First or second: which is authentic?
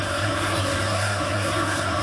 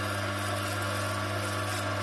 second